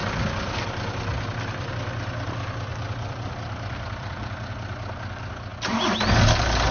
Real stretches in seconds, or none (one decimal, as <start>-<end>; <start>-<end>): 1.7-2.7; 4.5-6.7